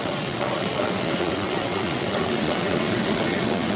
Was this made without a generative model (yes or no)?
no